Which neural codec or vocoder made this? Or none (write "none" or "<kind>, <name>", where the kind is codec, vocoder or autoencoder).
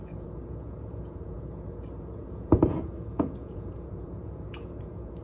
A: vocoder, Vocos